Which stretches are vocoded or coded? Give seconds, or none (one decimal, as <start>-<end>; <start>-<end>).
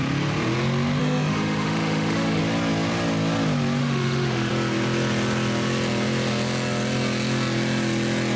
1.0-2.4; 3.8-4.5